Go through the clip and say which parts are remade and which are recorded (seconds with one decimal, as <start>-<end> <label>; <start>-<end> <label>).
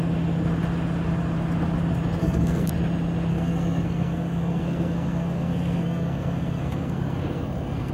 0.0-2.2 recorded; 2.2-2.7 remade; 2.7-3.3 recorded; 3.3-7.9 remade